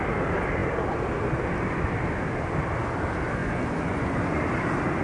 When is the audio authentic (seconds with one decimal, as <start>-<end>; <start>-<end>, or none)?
0.0-3.4; 4.4-5.0

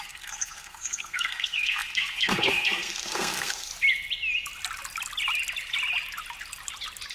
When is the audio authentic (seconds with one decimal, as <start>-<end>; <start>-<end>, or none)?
3.7-7.1

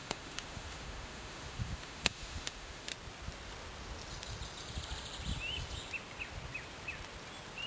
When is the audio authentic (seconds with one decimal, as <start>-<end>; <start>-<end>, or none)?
2.9-7.7

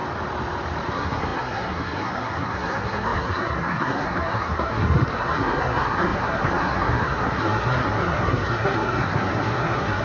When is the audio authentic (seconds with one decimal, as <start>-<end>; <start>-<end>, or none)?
0.0-0.9